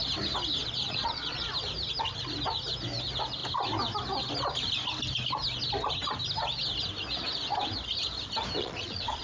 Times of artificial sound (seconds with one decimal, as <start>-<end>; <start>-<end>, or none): 0.6-1.5; 8.6-9.2